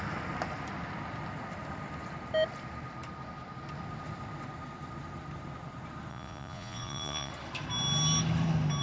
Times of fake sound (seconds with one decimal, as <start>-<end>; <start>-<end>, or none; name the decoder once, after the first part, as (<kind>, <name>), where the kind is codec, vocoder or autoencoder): 6.1-7.3 (vocoder, Vocos)